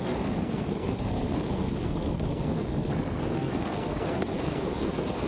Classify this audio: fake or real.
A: fake